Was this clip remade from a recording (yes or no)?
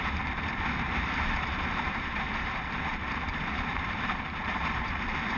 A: yes